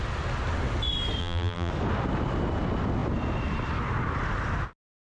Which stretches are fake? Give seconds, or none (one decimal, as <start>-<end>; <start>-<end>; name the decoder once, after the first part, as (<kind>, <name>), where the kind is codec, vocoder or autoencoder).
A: 1.2-1.7 (vocoder, BigVGAN v2)